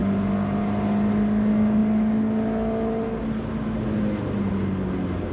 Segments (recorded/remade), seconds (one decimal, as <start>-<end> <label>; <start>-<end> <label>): 0.0-5.3 recorded